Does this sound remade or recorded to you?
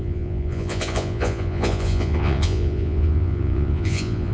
remade